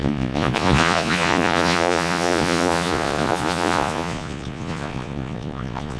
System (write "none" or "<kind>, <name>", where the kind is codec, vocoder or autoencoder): vocoder, Vocos